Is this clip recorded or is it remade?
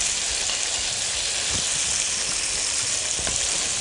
recorded